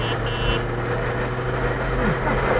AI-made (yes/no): no